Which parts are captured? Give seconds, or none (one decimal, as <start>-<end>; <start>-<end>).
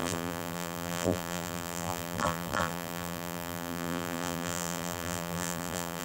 none